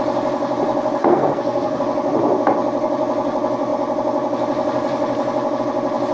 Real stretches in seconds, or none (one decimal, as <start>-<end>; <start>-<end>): 0.0-1.0; 1.8-6.1